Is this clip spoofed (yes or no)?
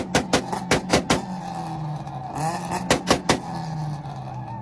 no